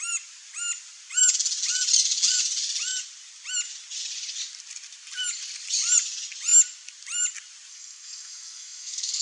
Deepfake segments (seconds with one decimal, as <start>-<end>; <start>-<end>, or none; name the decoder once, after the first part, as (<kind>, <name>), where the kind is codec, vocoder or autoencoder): 7.7-9.2 (codec, SNAC)